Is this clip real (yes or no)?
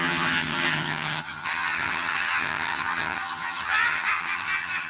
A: no